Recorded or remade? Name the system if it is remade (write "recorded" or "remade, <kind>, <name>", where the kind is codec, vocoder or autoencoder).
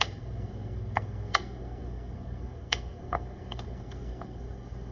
remade, codec, SNAC